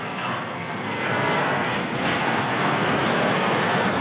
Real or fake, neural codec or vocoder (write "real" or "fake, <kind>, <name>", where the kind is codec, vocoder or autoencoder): fake, codec, SNAC